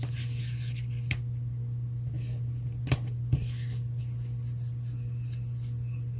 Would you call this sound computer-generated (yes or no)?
no